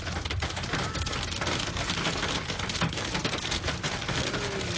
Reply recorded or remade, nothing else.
recorded